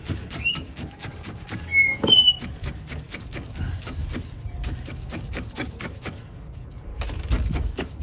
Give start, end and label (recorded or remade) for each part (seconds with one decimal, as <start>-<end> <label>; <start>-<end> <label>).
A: 0.0-4.0 remade; 4.0-4.8 recorded; 4.8-6.9 remade; 6.9-7.5 recorded; 7.5-8.0 remade